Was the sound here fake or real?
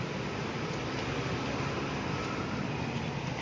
real